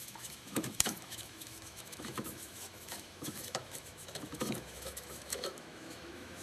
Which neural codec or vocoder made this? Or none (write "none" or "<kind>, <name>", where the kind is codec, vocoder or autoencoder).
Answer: autoencoder, DAC-VAE